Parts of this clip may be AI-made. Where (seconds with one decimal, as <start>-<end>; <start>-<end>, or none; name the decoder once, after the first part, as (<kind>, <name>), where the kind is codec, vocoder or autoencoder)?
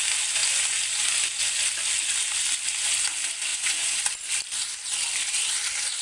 3.5-4.0 (vocoder, Vocos)